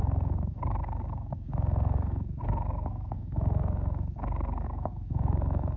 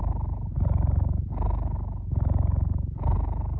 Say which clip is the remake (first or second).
first